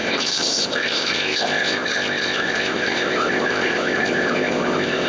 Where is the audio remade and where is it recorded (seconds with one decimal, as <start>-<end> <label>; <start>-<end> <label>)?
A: 0.0-5.1 remade